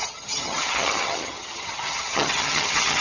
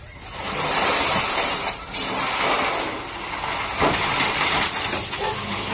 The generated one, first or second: first